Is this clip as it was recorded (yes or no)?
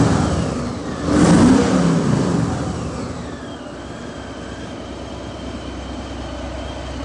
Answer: yes